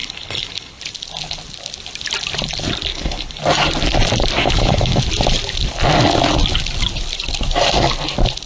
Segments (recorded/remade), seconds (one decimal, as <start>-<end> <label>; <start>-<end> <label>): 0.0-0.8 remade; 0.8-2.9 recorded; 2.9-3.4 remade; 3.4-4.4 recorded; 4.4-5.0 remade; 5.0-8.5 recorded